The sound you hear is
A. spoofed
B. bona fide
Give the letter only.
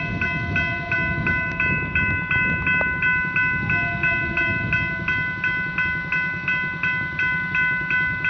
B